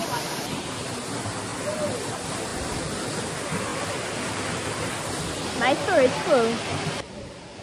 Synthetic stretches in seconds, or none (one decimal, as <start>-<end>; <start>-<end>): 2.5-3.1; 6.7-7.6